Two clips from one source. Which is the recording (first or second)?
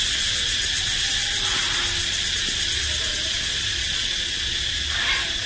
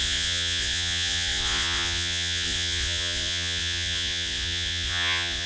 first